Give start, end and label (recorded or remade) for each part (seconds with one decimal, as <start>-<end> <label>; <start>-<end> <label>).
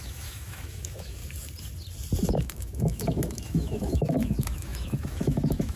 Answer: 0.0-1.2 remade; 1.2-2.3 recorded; 2.3-5.8 remade